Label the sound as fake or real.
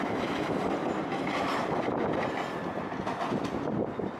real